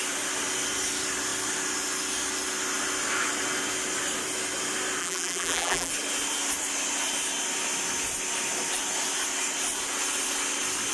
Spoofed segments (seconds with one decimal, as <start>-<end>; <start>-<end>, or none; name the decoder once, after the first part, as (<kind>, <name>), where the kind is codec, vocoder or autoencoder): 5.0-5.9 (vocoder, BigVGAN v2)